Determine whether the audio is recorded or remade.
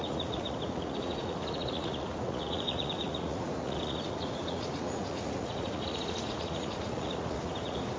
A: remade